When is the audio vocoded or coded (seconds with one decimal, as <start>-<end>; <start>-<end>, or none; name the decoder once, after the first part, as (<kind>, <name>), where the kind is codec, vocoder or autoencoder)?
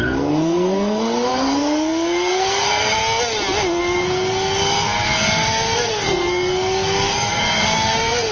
0.0-3.0 (codec, SNAC); 3.8-8.3